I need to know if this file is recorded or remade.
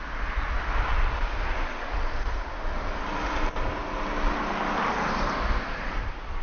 recorded